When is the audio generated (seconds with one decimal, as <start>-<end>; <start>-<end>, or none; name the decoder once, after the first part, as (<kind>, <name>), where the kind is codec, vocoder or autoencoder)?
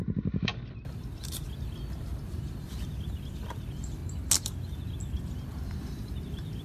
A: 0.0-0.5 (vocoder, BigVGAN v2); 1.2-4.0; 5.5-6.6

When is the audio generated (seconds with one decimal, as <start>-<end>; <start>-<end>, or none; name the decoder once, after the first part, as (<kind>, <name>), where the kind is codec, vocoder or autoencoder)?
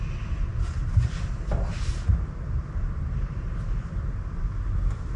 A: none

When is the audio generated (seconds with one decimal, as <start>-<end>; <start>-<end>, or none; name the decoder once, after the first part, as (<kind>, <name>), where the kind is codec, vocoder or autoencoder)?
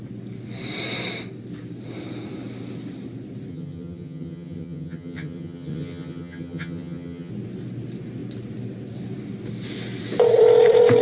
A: 3.5-7.3 (vocoder, HiFi-GAN)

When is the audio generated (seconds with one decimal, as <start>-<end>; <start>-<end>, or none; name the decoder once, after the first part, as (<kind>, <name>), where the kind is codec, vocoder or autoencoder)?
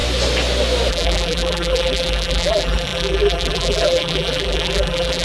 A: 0.9-5.2 (vocoder, BigVGAN v2)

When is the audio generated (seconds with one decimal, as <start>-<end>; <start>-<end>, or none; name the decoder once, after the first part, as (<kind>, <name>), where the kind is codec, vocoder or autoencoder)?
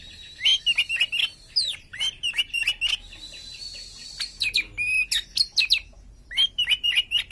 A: 0.0-0.5 (vocoder, BigVGAN v2); 1.6-2.6; 5.4-7.3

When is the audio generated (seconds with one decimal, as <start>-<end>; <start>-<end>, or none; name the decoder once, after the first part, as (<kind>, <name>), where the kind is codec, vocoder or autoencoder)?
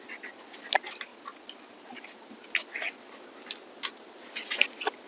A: none